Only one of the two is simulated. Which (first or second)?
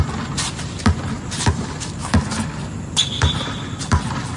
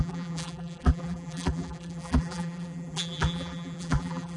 second